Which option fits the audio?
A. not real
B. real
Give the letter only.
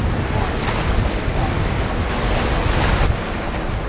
B